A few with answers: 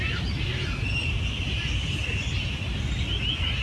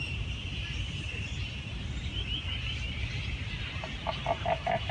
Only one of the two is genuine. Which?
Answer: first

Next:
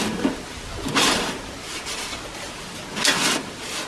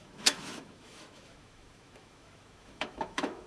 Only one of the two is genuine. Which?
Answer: first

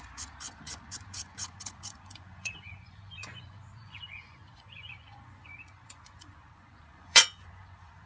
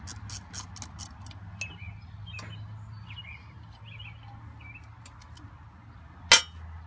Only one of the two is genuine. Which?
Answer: second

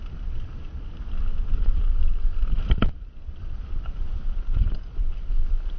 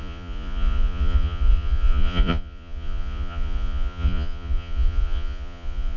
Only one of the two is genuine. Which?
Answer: first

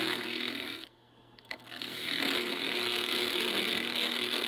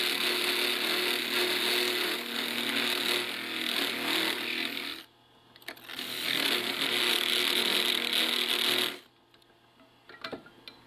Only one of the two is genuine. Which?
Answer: second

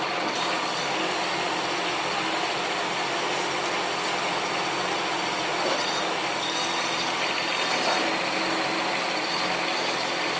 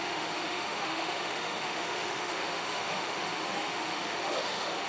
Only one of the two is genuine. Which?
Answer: first